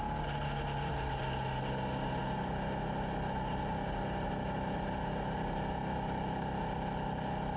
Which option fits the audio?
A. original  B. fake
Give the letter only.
A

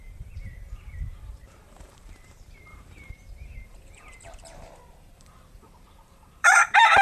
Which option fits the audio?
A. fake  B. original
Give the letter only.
A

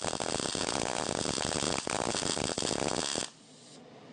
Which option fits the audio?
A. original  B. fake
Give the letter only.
A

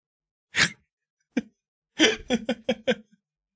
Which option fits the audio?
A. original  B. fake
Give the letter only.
A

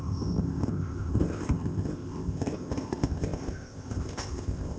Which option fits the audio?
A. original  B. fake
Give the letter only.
B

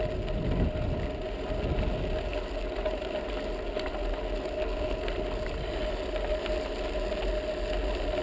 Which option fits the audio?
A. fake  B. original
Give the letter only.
B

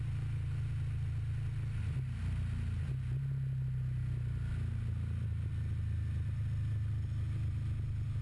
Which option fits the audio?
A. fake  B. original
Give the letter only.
B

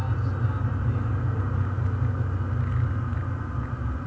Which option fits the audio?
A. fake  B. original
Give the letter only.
B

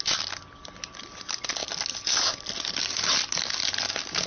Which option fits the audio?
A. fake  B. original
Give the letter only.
B